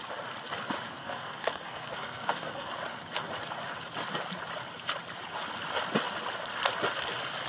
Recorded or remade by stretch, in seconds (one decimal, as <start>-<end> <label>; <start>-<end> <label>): 0.0-1.0 recorded; 1.0-2.7 remade; 2.7-7.5 recorded